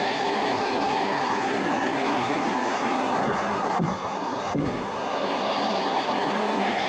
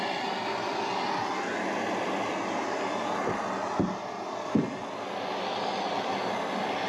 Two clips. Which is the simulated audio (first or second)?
first